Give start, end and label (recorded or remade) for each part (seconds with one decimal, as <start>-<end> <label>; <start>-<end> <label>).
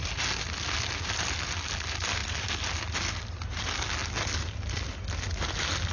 0.0-5.9 recorded